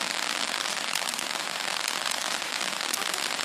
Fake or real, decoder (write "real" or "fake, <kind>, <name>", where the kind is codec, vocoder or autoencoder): real